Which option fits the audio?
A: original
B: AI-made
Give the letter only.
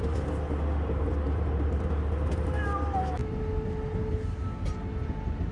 A